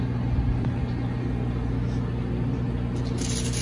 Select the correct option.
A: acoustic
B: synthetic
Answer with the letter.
A